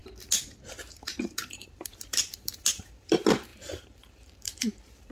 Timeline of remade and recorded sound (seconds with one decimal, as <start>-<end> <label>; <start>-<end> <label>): 0.0-0.9 recorded; 0.9-5.1 remade